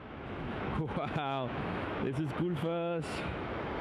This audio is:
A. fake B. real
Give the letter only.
A